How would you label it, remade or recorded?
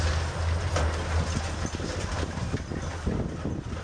recorded